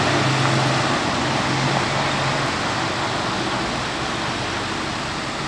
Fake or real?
real